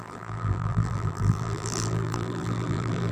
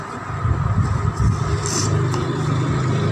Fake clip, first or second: first